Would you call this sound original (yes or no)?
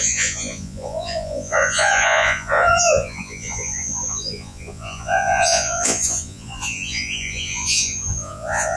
no